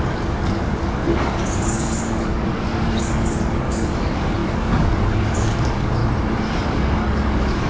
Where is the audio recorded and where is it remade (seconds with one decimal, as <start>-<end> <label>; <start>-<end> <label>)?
0.0-6.0 remade; 6.0-6.6 recorded; 6.6-7.7 remade